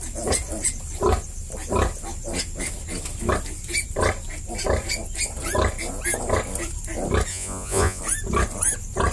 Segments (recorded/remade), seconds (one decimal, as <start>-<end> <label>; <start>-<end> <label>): 0.0-7.3 recorded; 7.3-8.0 remade; 8.0-9.1 recorded

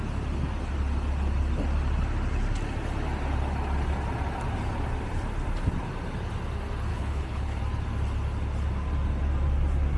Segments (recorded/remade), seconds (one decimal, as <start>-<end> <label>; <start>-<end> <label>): 0.0-6.9 recorded; 6.9-7.6 remade; 7.6-10.0 recorded

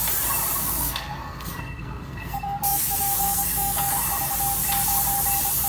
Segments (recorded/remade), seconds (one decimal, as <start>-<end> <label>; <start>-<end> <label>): 0.0-0.6 recorded; 0.6-3.9 remade; 3.9-5.7 recorded

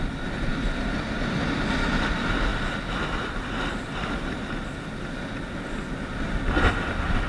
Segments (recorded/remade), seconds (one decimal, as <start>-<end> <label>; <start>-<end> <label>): 0.0-7.3 recorded